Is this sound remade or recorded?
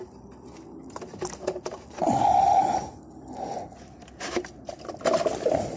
recorded